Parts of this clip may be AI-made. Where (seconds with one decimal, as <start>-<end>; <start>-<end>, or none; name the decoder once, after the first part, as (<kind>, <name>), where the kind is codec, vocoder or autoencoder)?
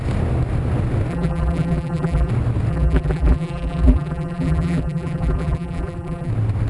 1.1-2.3 (vocoder, BigVGAN v2); 2.7-6.3